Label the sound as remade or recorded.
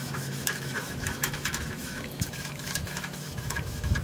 remade